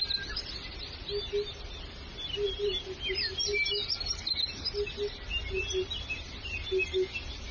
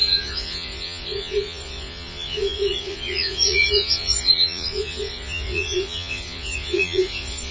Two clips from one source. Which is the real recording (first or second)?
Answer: first